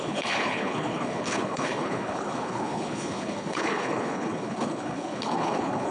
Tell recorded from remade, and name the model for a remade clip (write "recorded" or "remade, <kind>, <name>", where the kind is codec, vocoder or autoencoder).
remade, codec, HILCodec